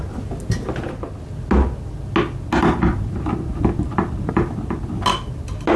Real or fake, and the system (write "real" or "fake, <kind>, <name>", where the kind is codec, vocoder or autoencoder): real